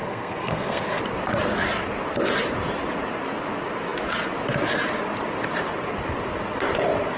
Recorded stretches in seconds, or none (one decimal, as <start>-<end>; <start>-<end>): 1.0-7.2